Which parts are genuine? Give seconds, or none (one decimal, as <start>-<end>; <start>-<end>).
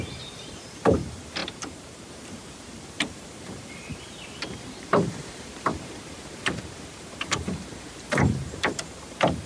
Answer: 3.9-4.5